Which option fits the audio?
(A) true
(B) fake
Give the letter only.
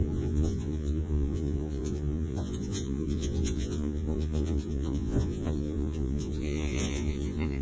B